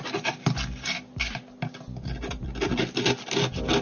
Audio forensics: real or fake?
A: real